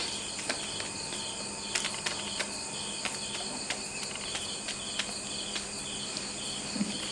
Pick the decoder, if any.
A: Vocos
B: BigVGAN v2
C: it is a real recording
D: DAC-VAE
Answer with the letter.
C